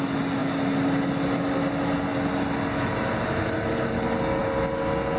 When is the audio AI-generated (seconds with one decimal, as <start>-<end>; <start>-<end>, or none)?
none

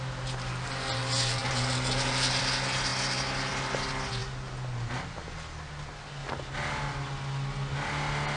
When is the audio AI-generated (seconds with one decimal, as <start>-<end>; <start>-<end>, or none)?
none

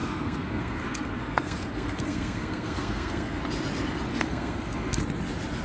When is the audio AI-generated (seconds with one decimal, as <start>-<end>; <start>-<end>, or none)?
0.0-3.4; 4.1-5.0

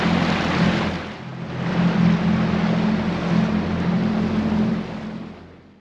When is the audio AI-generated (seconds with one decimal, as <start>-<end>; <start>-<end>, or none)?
none

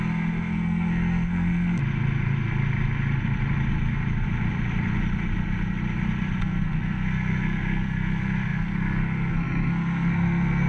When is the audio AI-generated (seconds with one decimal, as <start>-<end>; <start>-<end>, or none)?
0.0-1.8; 6.4-10.7

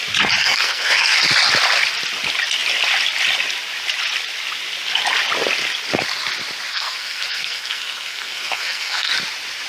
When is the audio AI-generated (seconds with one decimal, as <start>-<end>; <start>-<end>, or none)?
0.4-1.2; 6.7-9.1

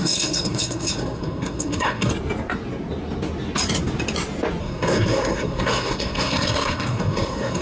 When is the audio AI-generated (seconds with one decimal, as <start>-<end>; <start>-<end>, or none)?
0.0-2.1; 4.6-7.6

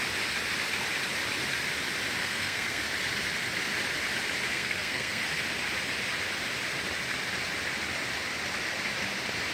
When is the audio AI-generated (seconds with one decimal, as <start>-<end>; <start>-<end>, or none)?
2.2-2.8; 4.5-5.2